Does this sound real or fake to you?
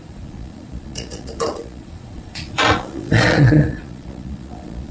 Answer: fake